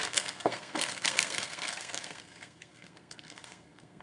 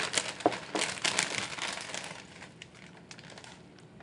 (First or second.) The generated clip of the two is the first